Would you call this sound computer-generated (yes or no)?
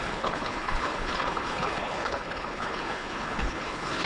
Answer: yes